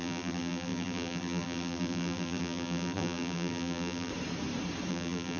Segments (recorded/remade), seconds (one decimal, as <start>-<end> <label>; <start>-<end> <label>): 0.0-4.1 remade; 4.1-4.9 recorded; 4.9-5.4 remade